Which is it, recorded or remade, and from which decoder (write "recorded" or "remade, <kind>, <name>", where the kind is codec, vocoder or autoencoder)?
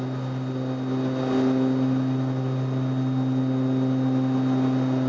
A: recorded